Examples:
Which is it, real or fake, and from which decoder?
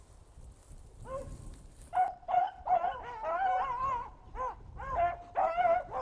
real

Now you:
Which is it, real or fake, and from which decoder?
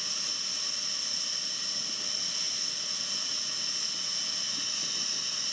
real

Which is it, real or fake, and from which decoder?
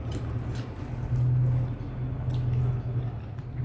real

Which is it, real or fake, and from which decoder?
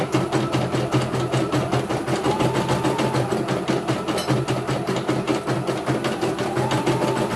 real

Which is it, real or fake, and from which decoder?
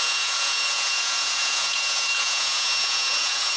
fake, vocoder, Vocos